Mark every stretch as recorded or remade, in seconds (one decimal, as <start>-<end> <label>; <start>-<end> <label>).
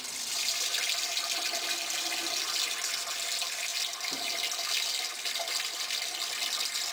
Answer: 0.0-6.9 recorded